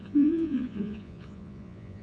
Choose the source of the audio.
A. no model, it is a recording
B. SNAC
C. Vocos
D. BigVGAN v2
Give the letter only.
C